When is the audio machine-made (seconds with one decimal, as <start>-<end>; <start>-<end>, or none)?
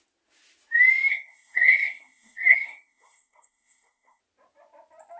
1.1-4.2